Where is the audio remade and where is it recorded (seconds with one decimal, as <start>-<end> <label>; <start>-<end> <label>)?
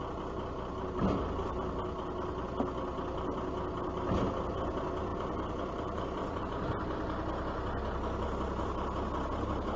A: 0.0-5.1 recorded; 5.1-6.4 remade; 6.4-9.8 recorded